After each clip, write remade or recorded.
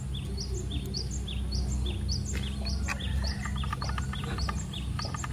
recorded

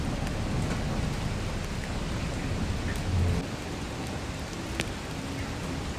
recorded